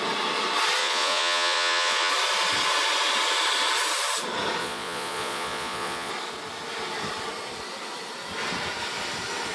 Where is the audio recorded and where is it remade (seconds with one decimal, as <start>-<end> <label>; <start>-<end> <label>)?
0.0-0.8 recorded; 0.8-2.1 remade; 2.1-4.6 recorded; 4.6-6.1 remade; 6.1-9.5 recorded